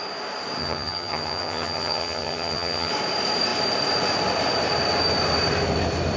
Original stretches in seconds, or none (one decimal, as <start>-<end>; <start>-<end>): 0.0-0.6; 2.9-6.2